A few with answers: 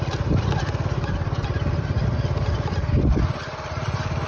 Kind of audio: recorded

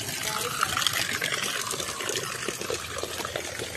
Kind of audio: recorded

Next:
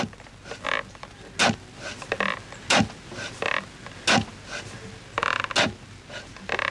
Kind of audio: recorded